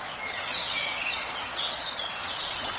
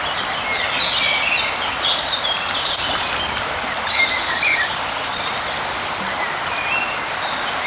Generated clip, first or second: first